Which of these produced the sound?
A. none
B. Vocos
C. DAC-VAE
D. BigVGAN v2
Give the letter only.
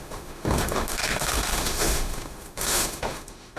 C